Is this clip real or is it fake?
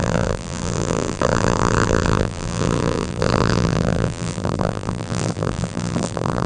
fake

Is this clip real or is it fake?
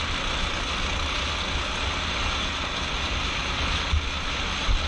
real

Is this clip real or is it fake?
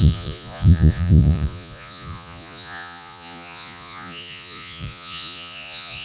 fake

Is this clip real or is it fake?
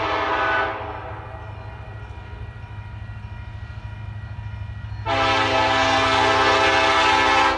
real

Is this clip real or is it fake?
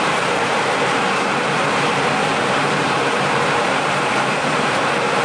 fake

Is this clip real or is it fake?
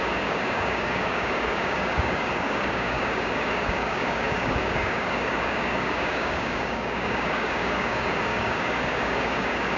fake